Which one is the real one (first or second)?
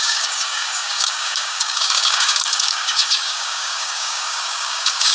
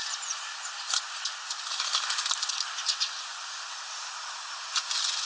second